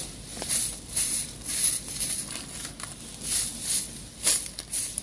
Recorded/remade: recorded